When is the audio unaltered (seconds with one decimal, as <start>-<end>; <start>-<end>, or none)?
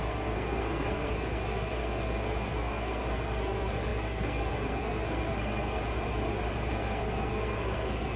5.8-6.7